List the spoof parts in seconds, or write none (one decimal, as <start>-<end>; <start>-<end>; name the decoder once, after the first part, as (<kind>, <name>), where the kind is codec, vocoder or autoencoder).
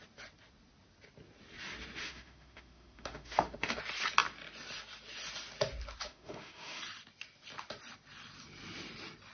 2.0-3.8 (autoencoder, DAC-VAE); 6.1-6.8